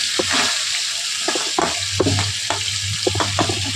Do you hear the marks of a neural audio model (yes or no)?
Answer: no